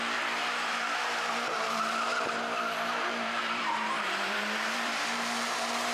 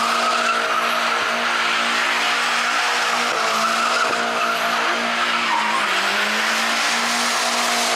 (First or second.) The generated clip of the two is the first